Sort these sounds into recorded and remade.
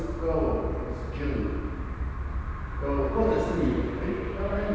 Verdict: recorded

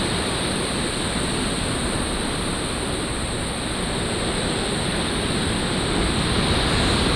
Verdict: recorded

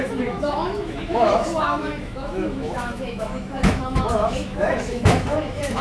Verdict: remade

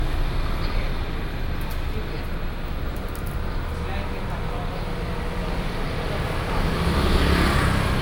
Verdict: recorded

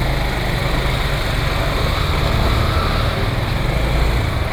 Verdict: recorded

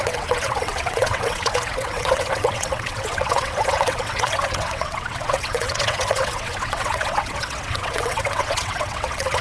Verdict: remade